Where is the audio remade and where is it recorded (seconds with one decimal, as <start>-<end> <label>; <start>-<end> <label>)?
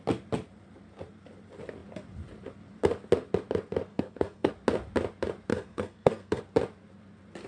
0.0-3.9 recorded; 3.9-4.5 remade; 4.5-5.5 recorded; 5.5-6.4 remade; 6.4-7.5 recorded